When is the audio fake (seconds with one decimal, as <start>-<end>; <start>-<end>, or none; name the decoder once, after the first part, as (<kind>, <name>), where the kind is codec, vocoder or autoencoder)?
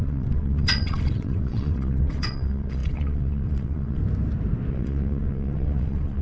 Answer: 0.0-4.0 (vocoder, WaveNeXt); 4.7-6.2